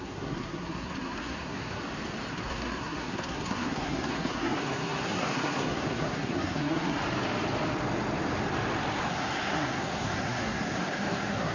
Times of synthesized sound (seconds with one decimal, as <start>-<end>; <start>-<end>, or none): 0.0-1.8; 2.3-7.0; 9.1-11.5